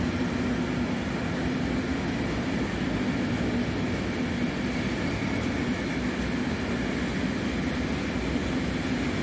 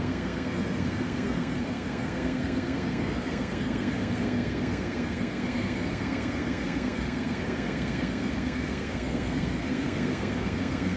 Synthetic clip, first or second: second